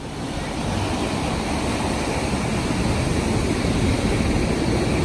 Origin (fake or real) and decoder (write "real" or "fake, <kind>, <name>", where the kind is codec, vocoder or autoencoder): real